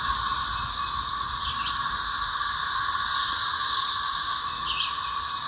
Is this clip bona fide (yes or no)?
yes